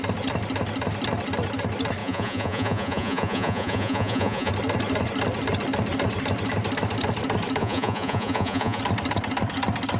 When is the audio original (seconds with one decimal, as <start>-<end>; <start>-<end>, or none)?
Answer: 0.0-2.0; 4.5-7.6; 8.8-10.0